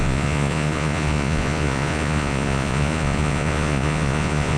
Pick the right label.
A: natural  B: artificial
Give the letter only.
B